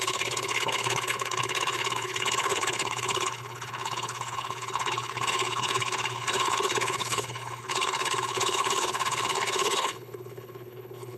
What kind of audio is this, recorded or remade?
remade